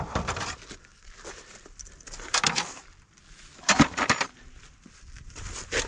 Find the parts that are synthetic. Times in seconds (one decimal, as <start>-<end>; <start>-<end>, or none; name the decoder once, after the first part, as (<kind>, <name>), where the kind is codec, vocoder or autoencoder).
0.0-5.9 (vocoder, BigVGAN v2)